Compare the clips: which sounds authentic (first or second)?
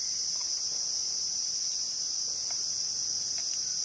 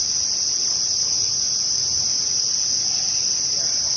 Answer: first